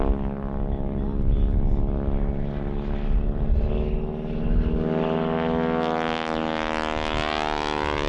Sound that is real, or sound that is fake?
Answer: real